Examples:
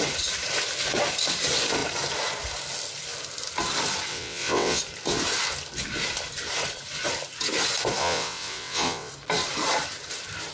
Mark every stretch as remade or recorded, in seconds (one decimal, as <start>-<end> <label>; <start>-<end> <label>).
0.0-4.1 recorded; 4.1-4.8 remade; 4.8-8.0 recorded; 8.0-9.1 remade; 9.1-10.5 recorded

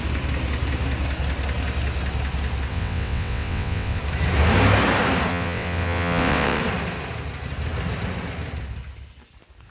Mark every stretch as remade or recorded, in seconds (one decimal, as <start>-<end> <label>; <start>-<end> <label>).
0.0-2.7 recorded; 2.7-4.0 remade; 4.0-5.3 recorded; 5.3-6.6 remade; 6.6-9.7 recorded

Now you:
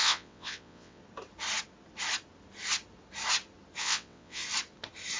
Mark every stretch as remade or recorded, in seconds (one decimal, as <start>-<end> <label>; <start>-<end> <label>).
0.0-1.0 remade; 1.0-3.8 recorded; 3.8-4.4 remade; 4.4-5.2 recorded